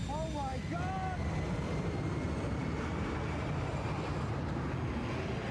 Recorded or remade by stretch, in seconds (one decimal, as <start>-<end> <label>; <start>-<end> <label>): 0.0-2.6 recorded; 2.6-4.5 remade; 4.5-5.5 recorded